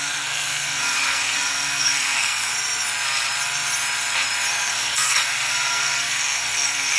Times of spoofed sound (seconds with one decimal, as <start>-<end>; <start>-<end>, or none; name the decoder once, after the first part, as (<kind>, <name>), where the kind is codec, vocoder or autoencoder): 0.0-2.5 (codec, SNAC); 4.5-7.0